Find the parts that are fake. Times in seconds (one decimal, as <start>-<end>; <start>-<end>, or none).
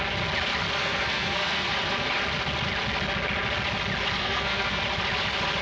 0.8-1.7; 4.2-4.8